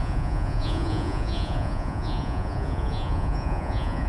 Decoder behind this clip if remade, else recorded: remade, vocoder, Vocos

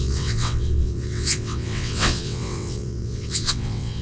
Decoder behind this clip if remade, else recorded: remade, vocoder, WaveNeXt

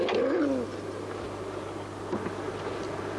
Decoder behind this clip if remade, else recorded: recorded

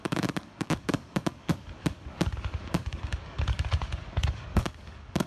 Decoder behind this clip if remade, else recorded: remade, codec, DAC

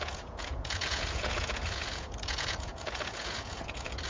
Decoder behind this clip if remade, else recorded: remade, vocoder, Vocos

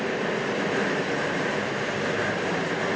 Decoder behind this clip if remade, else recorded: recorded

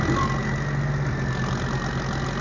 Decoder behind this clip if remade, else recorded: recorded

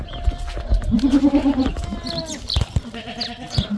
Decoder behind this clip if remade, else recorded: recorded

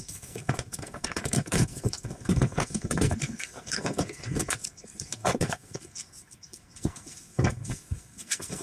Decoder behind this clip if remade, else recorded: remade, codec, SNAC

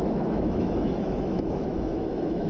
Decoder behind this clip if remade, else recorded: remade, autoencoder, DAC-VAE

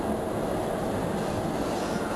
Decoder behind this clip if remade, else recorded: recorded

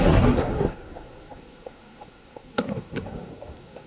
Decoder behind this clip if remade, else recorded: remade, codec, SNAC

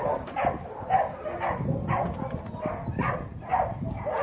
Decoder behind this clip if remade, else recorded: recorded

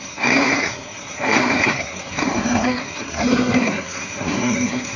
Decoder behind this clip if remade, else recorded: remade, codec, SNAC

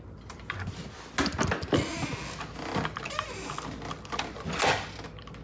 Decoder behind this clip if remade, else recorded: recorded